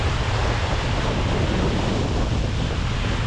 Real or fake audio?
real